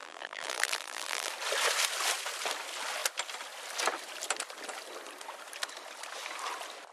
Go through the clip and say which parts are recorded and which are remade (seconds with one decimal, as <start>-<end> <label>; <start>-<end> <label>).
0.0-1.3 remade; 1.3-6.9 recorded